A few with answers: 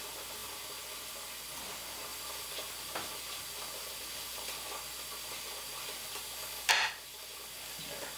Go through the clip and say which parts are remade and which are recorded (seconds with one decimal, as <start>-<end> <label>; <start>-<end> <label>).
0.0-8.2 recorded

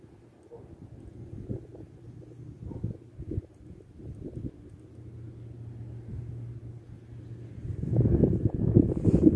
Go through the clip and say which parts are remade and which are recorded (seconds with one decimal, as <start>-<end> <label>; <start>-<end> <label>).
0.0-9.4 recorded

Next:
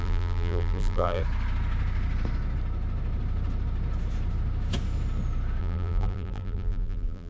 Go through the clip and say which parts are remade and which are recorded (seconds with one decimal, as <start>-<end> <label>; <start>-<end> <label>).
0.0-1.2 remade; 1.2-5.6 recorded; 5.6-7.3 remade